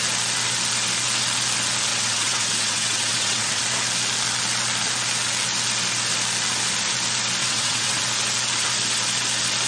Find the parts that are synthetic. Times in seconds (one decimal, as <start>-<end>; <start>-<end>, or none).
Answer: 1.9-3.6; 7.4-8.0